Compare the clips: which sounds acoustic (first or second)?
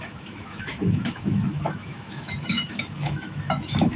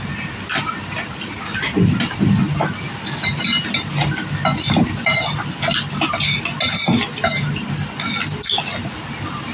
second